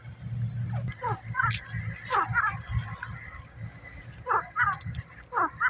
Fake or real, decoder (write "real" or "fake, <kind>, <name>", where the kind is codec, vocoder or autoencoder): real